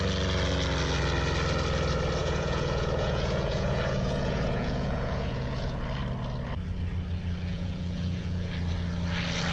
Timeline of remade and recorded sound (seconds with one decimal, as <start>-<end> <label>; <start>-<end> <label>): 0.0-2.2 recorded; 2.2-5.8 remade; 5.8-7.5 recorded; 7.5-8.5 remade; 8.5-9.5 recorded